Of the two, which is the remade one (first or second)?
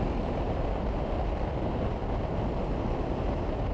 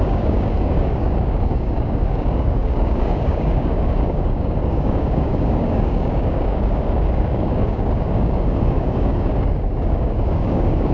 second